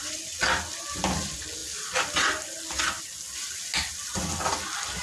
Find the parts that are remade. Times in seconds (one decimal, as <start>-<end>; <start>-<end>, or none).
none